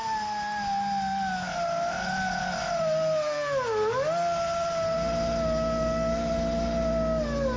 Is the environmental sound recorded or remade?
recorded